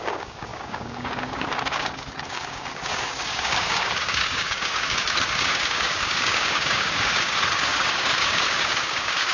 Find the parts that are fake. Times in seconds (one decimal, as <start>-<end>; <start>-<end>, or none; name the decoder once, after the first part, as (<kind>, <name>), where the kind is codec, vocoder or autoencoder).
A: 0.0-9.3 (codec, DAC)